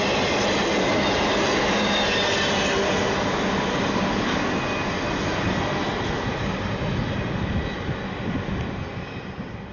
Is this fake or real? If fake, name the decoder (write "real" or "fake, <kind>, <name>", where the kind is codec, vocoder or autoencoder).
real